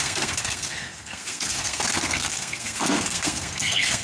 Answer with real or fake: fake